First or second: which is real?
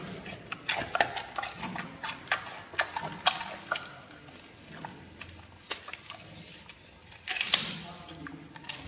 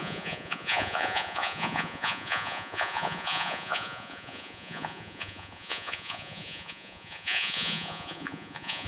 first